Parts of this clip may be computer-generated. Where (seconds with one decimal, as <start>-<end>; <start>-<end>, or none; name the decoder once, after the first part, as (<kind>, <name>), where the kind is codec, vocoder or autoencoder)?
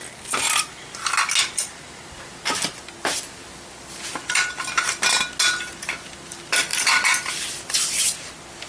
none